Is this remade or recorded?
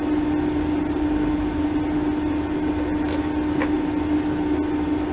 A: recorded